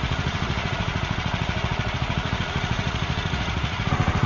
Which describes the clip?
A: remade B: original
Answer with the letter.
A